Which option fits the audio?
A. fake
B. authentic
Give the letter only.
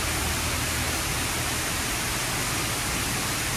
B